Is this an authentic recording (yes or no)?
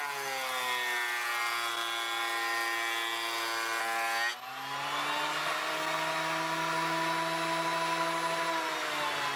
yes